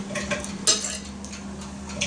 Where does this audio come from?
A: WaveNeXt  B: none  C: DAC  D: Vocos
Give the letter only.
B